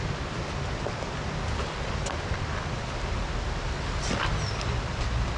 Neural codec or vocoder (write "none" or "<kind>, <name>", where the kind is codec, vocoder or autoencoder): none